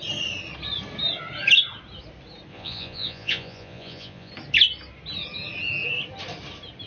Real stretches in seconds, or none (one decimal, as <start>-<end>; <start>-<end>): 0.0-2.5; 4.3-6.9